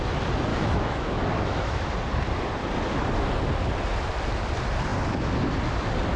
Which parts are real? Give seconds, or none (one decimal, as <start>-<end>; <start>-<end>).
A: 0.0-0.5; 1.9-6.2